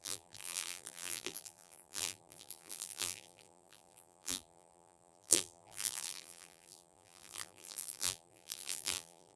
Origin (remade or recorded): remade